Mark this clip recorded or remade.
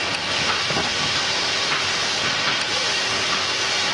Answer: recorded